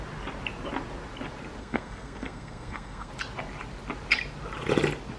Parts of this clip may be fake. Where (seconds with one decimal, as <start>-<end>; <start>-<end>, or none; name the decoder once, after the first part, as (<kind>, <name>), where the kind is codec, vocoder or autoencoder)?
1.6-3.1 (codec, SNAC)

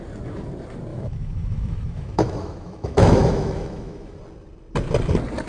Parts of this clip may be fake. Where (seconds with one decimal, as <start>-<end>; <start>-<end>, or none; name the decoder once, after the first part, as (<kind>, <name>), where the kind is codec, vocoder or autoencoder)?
0.9-4.2 (autoencoder, DAC-VAE)

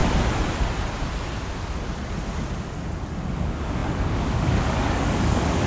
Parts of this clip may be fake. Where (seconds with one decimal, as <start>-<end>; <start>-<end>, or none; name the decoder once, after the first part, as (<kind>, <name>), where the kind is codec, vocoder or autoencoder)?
3.3-5.7 (codec, DAC)

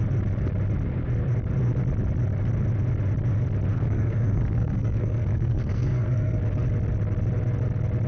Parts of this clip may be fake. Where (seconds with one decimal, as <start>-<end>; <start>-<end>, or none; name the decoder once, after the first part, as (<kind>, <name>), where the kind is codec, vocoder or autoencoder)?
3.7-6.4 (codec, SNAC)